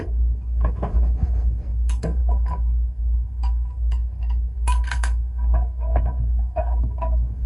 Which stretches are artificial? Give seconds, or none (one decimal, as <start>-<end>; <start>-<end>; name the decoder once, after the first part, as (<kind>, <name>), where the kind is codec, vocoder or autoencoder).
0.0-7.5 (codec, SNAC)